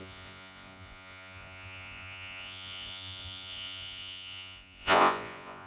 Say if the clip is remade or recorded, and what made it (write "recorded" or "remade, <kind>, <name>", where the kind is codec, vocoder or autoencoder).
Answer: remade, vocoder, Vocos